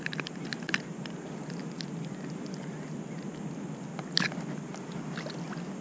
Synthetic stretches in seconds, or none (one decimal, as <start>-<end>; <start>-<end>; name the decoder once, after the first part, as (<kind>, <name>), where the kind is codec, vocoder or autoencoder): none